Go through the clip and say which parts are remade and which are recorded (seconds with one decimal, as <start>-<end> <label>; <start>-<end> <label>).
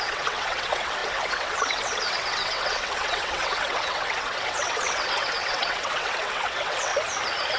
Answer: 0.0-6.9 remade; 6.9-7.6 recorded